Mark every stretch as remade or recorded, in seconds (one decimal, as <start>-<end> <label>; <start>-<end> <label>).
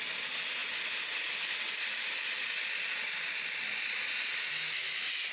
0.0-5.3 recorded